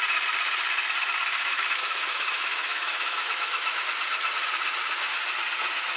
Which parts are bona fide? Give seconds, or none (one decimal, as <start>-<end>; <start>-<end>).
0.0-1.3; 3.8-6.0